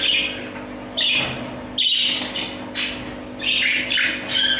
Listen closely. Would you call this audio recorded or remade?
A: recorded